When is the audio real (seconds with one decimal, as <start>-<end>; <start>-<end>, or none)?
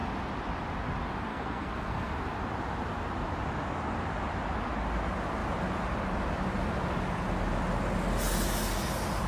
0.0-1.3; 2.1-9.3